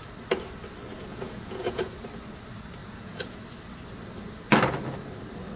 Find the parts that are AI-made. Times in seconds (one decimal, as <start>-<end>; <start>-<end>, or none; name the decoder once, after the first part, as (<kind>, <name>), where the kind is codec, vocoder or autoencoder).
1.1-1.8 (vocoder, Vocos); 2.8-3.4